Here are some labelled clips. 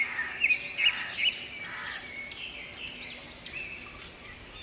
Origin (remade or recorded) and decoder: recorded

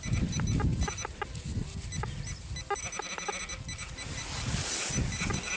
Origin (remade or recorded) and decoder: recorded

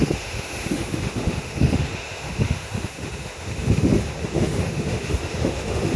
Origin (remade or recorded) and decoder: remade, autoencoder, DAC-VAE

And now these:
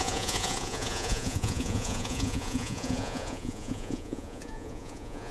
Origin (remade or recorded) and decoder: remade, vocoder, Vocos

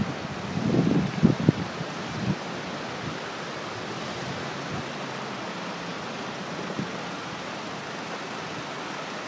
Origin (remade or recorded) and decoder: recorded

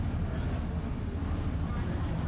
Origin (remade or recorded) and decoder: recorded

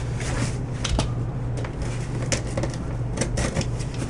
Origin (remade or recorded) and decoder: recorded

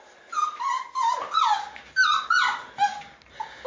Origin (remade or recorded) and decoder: recorded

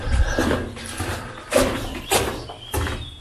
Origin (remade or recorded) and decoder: remade, vocoder, BigVGAN v2